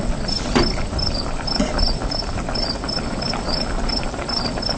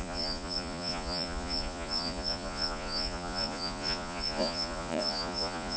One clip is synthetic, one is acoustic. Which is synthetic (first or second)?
second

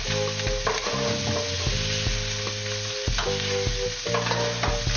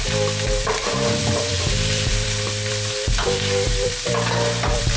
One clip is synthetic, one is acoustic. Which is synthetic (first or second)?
second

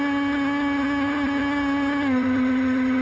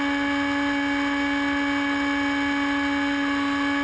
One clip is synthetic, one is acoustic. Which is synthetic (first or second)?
first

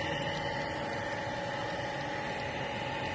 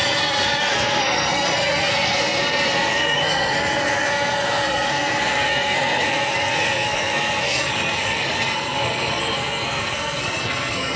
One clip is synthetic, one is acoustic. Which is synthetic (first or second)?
second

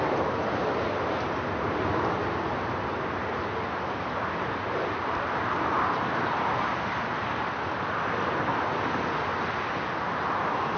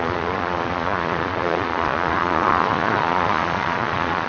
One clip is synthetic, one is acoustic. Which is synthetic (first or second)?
second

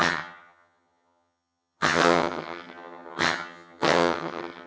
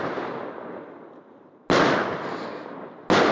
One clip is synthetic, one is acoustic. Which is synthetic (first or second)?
first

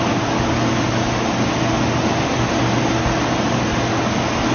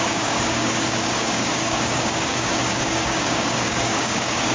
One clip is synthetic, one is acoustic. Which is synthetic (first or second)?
second